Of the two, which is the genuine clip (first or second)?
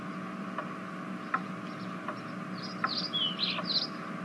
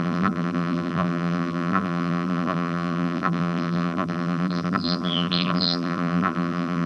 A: first